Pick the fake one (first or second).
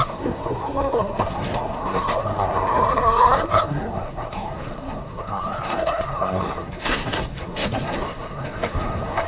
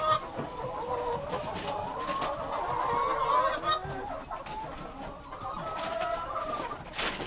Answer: first